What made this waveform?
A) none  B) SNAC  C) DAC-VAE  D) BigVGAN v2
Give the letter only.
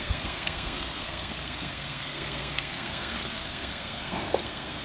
B